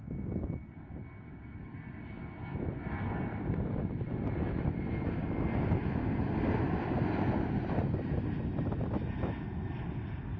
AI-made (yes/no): no